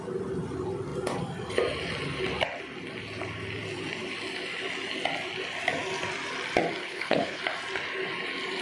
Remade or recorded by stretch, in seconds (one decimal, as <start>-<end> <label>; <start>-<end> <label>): 0.0-6.8 recorded; 6.8-7.4 remade; 7.4-8.6 recorded